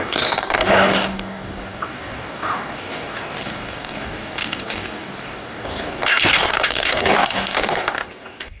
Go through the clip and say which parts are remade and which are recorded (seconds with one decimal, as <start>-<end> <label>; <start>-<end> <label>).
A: 0.0-8.6 remade